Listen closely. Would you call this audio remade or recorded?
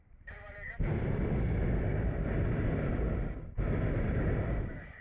recorded